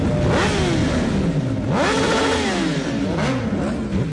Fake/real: real